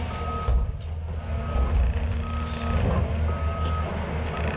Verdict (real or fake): real